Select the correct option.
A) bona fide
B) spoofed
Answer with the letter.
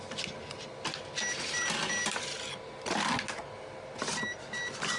A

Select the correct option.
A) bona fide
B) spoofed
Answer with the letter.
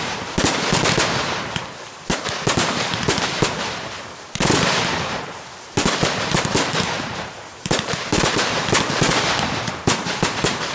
B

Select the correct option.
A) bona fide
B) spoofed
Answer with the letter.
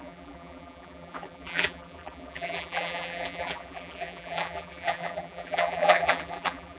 B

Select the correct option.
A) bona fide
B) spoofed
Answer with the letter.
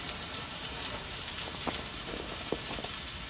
B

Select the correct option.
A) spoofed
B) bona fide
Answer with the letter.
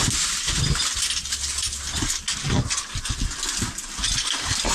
B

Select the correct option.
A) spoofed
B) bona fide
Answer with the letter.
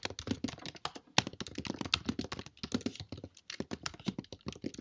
B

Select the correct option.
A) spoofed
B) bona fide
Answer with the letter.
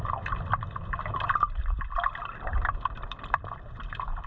B